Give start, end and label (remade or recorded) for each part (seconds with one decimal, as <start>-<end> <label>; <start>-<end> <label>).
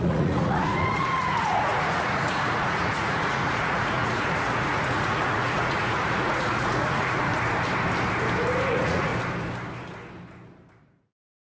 0.0-7.3 remade; 7.3-8.7 recorded; 8.7-9.1 remade; 9.1-10.8 recorded; 10.8-11.5 remade